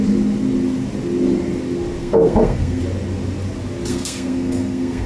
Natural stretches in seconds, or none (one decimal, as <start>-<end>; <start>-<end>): 0.0-2.0; 2.8-3.9